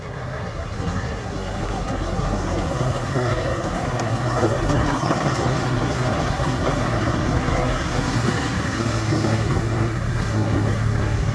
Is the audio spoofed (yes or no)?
yes